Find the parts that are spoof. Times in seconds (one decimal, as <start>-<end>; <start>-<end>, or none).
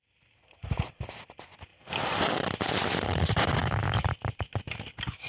3.6-4.2